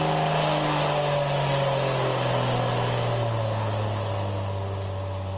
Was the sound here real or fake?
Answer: real